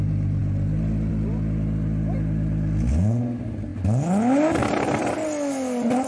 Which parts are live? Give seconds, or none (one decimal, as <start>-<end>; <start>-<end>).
0.0-6.1